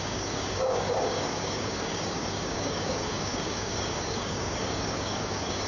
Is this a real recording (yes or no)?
no